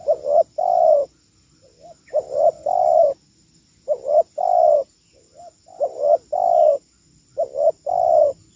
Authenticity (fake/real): real